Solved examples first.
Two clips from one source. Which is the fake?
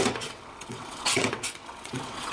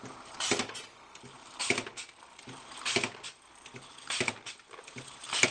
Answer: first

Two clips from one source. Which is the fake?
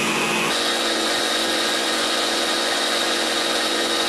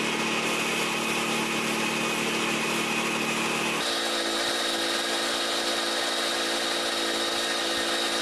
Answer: first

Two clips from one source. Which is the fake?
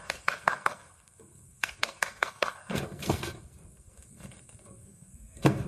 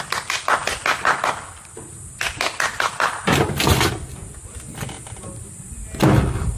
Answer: first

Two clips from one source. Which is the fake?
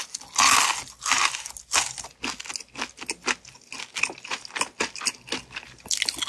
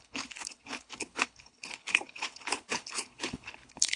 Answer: second